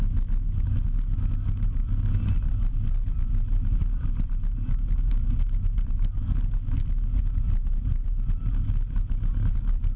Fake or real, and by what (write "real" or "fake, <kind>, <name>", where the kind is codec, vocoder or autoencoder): real